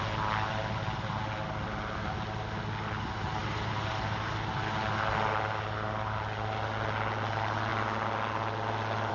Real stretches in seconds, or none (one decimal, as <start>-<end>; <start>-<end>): 0.0-9.1